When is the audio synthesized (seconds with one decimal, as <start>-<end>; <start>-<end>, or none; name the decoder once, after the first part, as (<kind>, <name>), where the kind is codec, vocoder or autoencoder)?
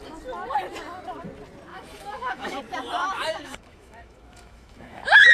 1.7-2.6 (autoencoder, DAC-VAE); 3.0-5.3